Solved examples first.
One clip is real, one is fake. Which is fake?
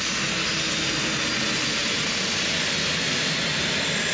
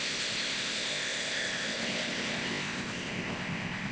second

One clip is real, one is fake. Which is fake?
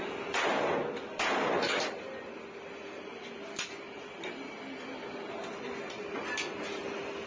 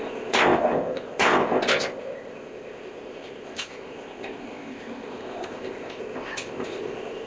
second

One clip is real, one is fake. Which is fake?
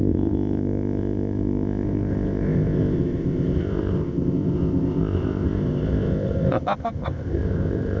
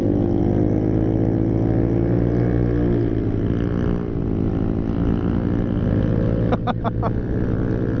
first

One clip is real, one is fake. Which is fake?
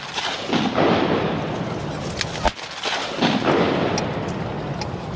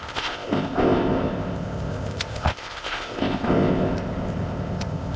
second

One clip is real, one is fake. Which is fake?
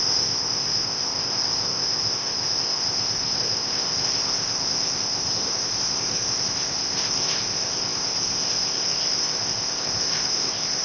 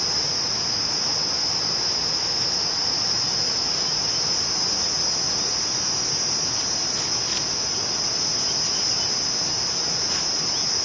first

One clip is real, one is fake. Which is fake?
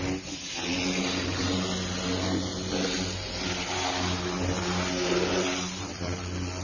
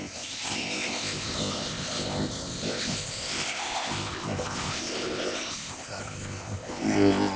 second